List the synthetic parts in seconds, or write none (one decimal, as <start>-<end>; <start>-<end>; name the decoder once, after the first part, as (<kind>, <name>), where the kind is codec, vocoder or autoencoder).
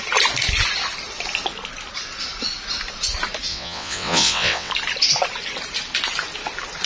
3.5-4.7 (vocoder, WaveNeXt)